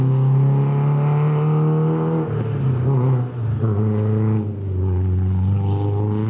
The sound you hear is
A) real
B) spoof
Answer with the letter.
A